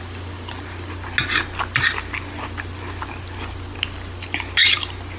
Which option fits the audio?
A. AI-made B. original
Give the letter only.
B